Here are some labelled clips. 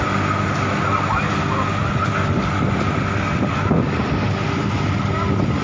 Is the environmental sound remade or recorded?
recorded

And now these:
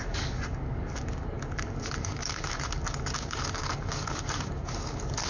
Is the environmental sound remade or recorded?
remade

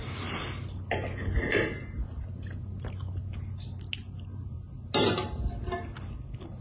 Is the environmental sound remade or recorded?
recorded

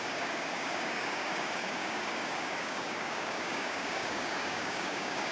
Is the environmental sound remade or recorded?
remade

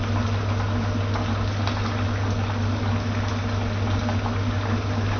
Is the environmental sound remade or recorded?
recorded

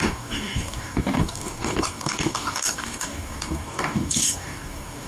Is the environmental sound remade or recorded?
remade